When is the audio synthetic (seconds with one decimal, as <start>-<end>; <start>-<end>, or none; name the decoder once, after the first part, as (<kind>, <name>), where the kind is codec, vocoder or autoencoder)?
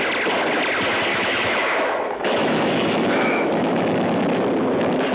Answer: 1.1-4.2 (autoencoder, DAC-VAE)